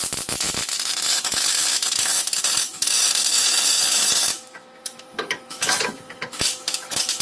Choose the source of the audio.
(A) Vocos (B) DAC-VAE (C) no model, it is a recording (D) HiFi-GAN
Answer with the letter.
B